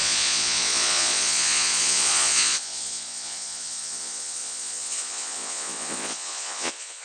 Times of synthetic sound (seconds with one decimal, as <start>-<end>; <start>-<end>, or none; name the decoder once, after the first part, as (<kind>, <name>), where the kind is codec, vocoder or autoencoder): 0.0-7.0 (vocoder, Vocos)